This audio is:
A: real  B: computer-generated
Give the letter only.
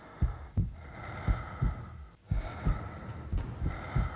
A